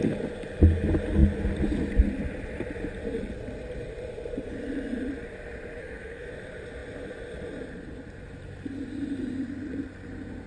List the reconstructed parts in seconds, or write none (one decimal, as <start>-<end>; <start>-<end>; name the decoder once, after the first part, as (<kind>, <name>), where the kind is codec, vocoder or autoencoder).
5.8-6.3 (codec, SNAC)